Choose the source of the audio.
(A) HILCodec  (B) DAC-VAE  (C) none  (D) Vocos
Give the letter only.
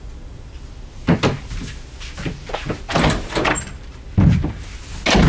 C